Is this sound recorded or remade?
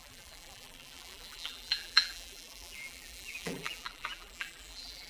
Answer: remade